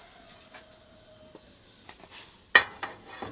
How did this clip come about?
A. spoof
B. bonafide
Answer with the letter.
B